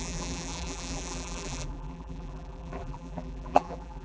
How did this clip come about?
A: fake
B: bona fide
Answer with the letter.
A